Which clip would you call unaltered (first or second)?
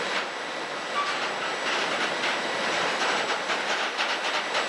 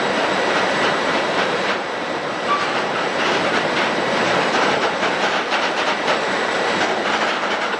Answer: first